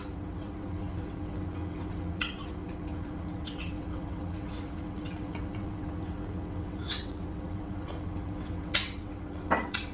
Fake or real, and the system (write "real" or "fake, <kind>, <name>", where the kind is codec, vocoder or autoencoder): fake, vocoder, WaveNeXt